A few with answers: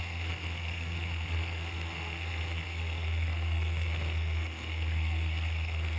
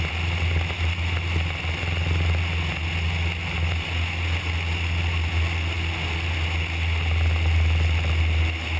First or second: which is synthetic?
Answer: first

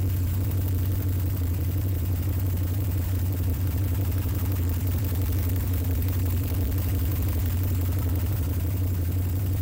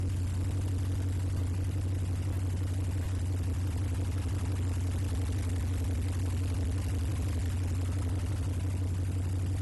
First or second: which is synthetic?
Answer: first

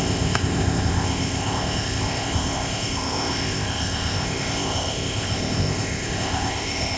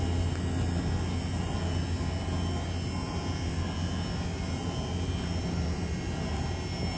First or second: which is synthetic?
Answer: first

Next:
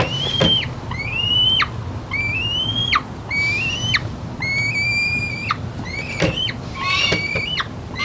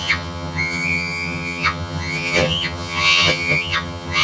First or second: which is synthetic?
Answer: second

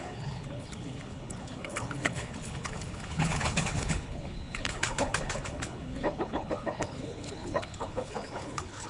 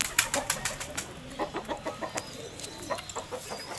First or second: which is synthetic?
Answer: first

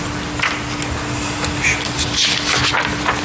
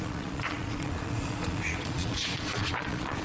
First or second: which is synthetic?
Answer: second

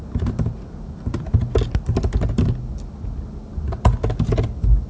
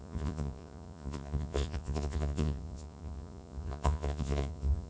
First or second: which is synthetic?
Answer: second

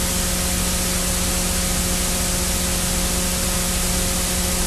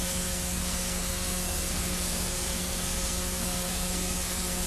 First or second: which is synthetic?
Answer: second